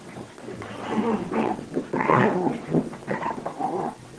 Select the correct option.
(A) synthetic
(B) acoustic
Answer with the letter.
A